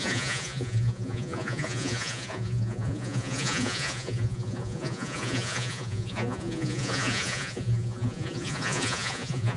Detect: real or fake fake